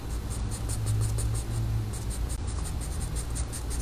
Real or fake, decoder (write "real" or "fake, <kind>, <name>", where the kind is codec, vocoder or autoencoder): real